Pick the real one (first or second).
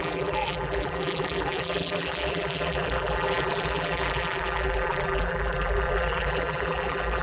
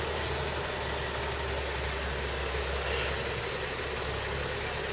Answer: second